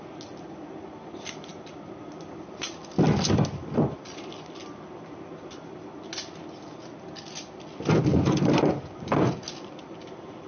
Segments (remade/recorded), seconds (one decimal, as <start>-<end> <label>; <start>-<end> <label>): 0.0-8.1 recorded; 8.1-9.2 remade; 9.2-10.5 recorded

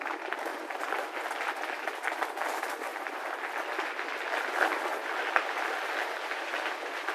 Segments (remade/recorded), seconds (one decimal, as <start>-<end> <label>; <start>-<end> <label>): 0.0-2.9 recorded; 2.9-3.5 remade; 3.5-7.1 recorded

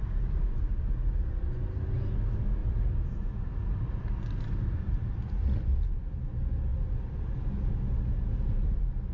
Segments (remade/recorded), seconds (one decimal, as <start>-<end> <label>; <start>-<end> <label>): 0.0-2.6 recorded; 2.6-5.3 remade; 5.3-9.1 recorded

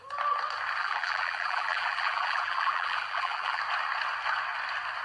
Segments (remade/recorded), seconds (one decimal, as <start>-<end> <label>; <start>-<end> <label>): 0.0-0.8 recorded; 0.8-3.6 remade; 3.6-5.0 recorded

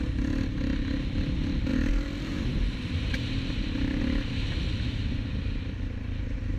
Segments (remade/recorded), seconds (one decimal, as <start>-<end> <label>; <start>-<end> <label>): 0.0-1.7 recorded; 1.7-4.0 remade; 4.0-6.6 recorded

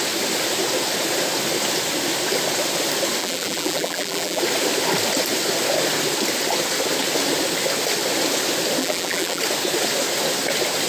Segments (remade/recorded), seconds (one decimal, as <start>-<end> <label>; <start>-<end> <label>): 0.0-3.2 recorded; 3.2-4.4 remade; 4.4-8.8 recorded; 8.8-9.4 remade; 9.4-10.9 recorded

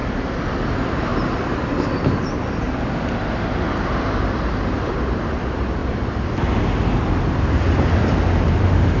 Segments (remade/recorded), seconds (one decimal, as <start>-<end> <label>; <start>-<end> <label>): 0.0-0.7 recorded; 0.7-1.1 remade; 1.1-4.5 recorded; 4.5-5.8 remade; 5.8-8.5 recorded; 8.5-9.0 remade

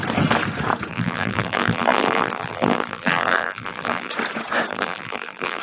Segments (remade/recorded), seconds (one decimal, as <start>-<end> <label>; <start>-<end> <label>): 0.0-0.9 recorded; 0.9-4.1 remade; 4.1-4.7 recorded; 4.7-5.6 remade